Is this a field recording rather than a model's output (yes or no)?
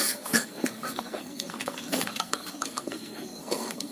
no